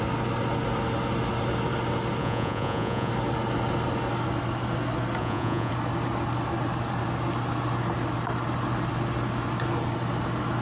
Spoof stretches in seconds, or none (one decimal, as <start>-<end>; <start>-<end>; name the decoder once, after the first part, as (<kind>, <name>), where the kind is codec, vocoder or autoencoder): 2.2-3.1 (vocoder, Vocos); 5.2-5.7